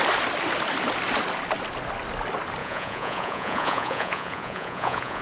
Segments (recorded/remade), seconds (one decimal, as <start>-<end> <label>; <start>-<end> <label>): 0.0-2.6 recorded; 2.6-5.2 remade

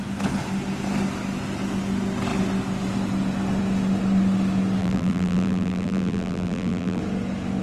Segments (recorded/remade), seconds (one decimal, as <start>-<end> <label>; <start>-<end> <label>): 0.0-4.8 recorded; 4.8-7.0 remade; 7.0-7.6 recorded

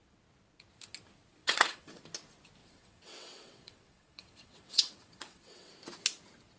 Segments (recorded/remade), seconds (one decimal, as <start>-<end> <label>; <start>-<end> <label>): 0.0-1.4 recorded; 1.4-2.0 remade; 2.0-2.6 recorded; 2.6-5.7 remade; 5.7-6.6 recorded

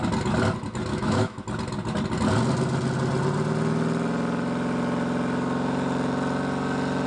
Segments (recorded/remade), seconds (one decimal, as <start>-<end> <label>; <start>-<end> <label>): 0.0-0.9 recorded; 0.9-1.4 remade; 1.4-7.1 recorded

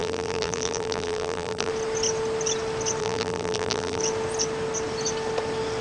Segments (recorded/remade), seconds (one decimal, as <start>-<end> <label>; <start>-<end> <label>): 0.0-1.7 remade; 1.7-3.0 recorded; 3.0-4.0 remade; 4.0-5.8 recorded